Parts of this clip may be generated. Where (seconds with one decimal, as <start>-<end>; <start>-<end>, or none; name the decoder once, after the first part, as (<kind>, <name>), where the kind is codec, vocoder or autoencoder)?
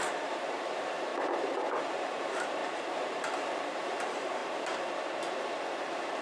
0.0-1.1 (vocoder, BigVGAN v2); 1.8-4.4